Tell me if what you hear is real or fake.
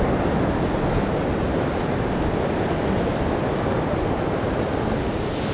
real